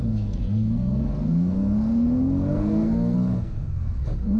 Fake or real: fake